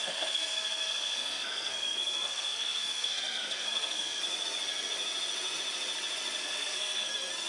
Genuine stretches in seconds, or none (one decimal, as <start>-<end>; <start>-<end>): 4.2-6.4; 7.1-7.5